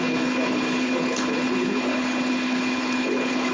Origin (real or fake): fake